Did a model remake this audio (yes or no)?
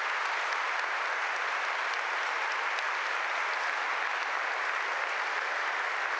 no